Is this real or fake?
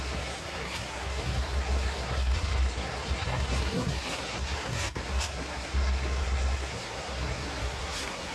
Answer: fake